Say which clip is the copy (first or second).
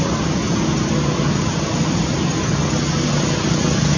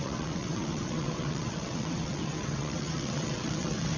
second